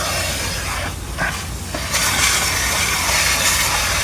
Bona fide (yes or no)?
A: yes